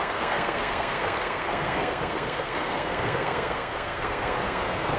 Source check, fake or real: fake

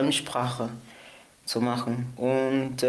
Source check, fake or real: real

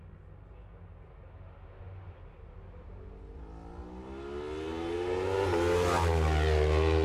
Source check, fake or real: real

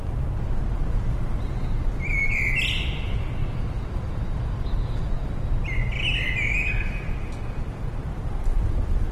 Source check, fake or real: real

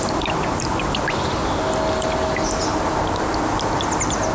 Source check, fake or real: real